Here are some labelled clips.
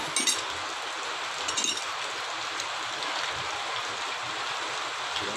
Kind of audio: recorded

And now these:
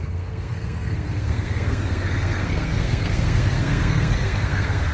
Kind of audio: remade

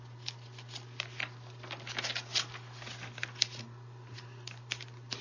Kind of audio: recorded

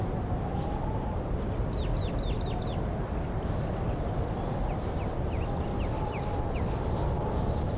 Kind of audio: recorded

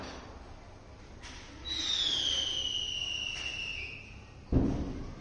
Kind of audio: recorded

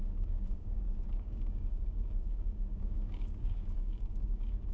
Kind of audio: remade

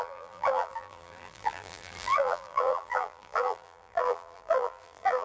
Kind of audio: remade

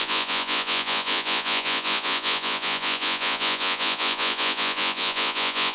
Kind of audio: remade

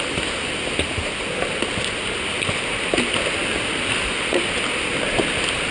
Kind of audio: recorded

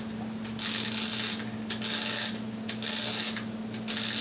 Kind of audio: recorded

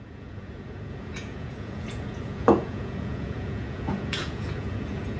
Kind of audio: remade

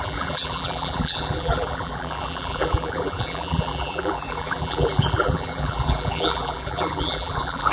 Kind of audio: remade